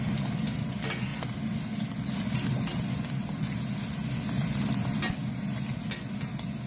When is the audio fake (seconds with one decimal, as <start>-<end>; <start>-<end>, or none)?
none